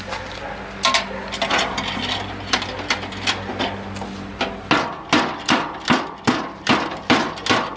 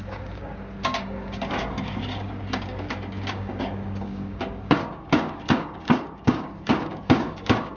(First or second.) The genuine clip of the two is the first